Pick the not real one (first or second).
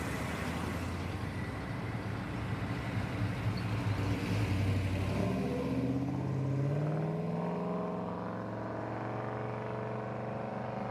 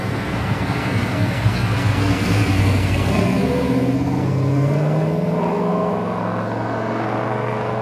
second